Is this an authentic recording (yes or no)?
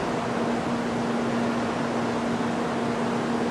yes